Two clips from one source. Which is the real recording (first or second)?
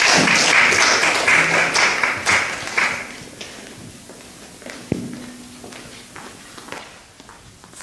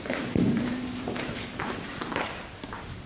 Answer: first